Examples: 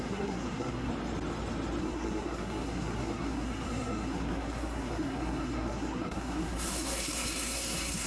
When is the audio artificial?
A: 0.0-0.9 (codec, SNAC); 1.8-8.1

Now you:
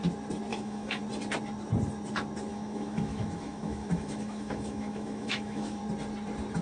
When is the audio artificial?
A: 0.5-1.0 (autoencoder, DAC-VAE); 2.5-5.8

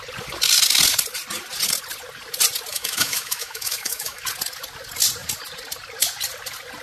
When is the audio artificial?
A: 2.7-4.2 (autoencoder, DAC-VAE)

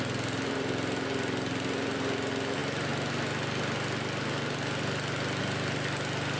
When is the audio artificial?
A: none

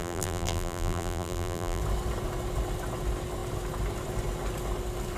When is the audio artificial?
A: 0.0-1.8 (vocoder, BigVGAN v2)

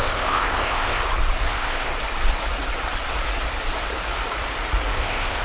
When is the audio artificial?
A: 0.0-1.0 (codec, ZipCodec); 1.5-1.9; 4.9-5.4